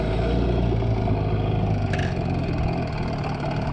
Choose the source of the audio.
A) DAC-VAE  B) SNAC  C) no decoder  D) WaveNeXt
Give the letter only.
C